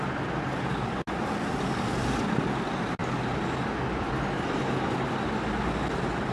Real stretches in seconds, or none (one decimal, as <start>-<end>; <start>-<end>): 0.0-6.3